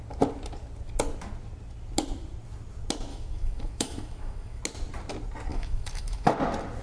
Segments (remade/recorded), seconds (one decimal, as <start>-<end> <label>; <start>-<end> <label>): 0.0-3.1 recorded; 3.1-4.6 remade; 4.6-5.5 recorded; 5.5-6.3 remade; 6.3-6.8 recorded